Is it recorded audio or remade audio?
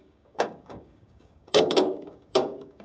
remade